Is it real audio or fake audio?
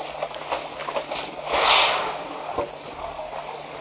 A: real